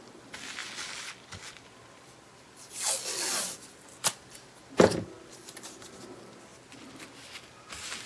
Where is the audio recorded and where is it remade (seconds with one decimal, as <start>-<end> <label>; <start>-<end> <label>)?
0.0-8.1 recorded

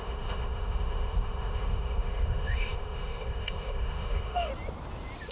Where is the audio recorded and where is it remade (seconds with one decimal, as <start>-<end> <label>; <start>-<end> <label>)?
0.0-4.5 remade; 4.5-5.3 recorded

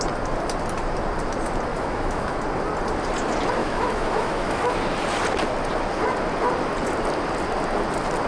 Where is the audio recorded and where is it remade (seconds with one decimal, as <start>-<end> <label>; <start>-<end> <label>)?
0.0-1.7 recorded; 1.7-2.4 remade; 2.4-3.6 recorded; 3.6-4.7 remade; 4.7-8.3 recorded

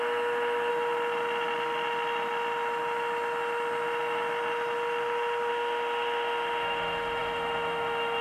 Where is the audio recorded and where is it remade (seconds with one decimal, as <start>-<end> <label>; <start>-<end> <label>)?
0.0-0.7 remade; 0.7-5.5 recorded; 5.5-8.2 remade

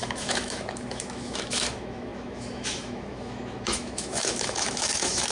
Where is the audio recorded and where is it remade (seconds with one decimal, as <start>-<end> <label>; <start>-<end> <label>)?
0.0-5.3 remade

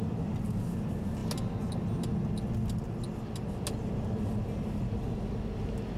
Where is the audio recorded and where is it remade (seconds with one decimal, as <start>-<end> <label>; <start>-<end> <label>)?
0.0-6.0 recorded

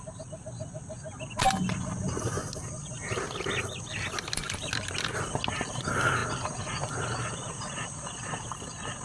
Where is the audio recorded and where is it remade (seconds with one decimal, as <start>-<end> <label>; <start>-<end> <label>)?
0.0-9.0 recorded